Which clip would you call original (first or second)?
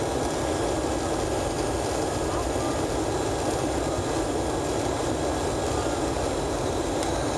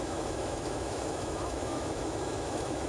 first